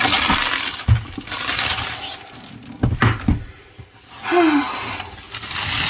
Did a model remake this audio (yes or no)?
no